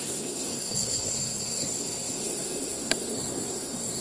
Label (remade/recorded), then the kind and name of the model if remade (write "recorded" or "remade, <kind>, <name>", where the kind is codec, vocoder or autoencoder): remade, codec, SNAC